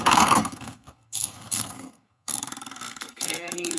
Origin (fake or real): fake